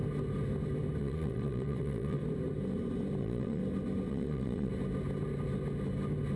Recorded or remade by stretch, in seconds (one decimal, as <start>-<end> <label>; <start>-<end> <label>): 0.0-1.0 recorded; 1.0-2.2 remade; 2.2-3.2 recorded; 3.2-3.6 remade; 3.6-4.1 recorded; 4.1-4.7 remade; 4.7-6.4 recorded